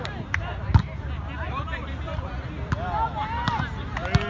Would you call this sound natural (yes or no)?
yes